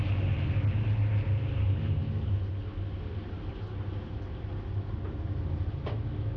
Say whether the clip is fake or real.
real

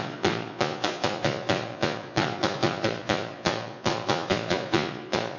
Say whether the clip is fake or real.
fake